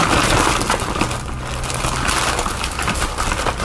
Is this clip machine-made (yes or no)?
no